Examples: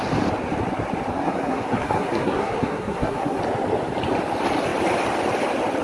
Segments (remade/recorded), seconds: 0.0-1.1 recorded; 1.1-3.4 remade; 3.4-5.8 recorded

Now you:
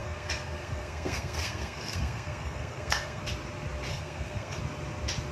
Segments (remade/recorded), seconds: 0.0-3.2 remade; 3.2-3.9 recorded; 3.9-4.6 remade; 4.6-5.3 recorded

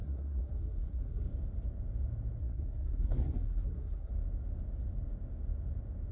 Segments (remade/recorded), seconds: 0.0-1.3 remade; 1.3-2.4 recorded; 2.4-4.1 remade; 4.1-6.1 recorded

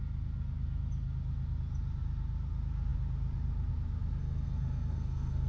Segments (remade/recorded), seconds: 0.0-4.2 recorded; 4.2-5.5 remade

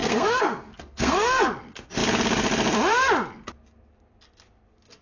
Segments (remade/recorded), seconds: 0.0-1.5 remade; 1.5-5.0 recorded

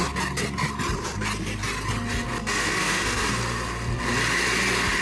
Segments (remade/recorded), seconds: 0.0-2.4 recorded; 2.4-3.3 remade; 3.3-5.0 recorded

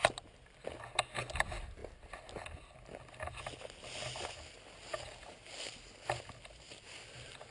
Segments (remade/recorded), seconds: 0.0-7.5 recorded